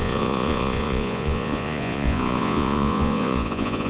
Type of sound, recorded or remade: remade